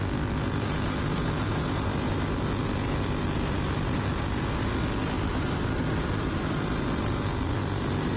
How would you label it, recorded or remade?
recorded